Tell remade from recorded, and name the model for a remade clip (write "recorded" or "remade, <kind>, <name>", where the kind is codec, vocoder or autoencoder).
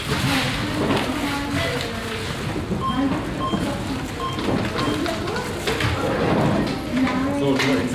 recorded